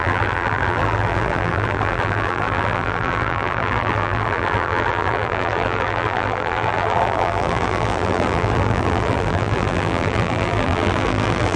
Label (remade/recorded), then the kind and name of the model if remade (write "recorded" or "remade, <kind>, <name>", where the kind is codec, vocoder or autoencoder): remade, vocoder, BigVGAN v2